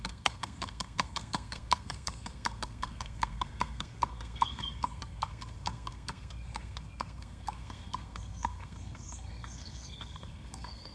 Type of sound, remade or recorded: remade